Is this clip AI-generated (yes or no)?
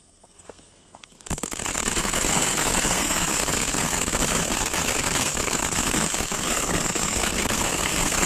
yes